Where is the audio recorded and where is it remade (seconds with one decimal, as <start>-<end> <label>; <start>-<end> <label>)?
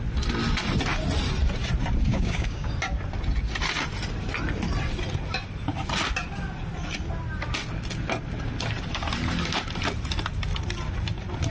0.0-2.1 recorded; 2.1-2.7 remade; 2.7-11.5 recorded